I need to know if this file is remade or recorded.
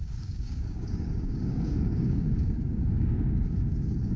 remade